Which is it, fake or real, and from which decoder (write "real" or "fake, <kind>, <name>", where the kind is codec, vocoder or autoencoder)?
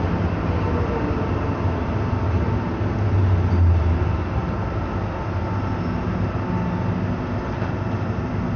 real